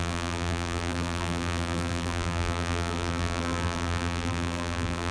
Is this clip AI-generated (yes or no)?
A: yes